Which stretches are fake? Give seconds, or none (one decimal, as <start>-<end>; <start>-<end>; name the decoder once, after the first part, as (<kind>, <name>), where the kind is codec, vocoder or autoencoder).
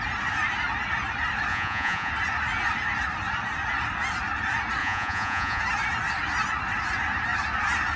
1.5-2.1 (vocoder, Vocos); 4.8-5.6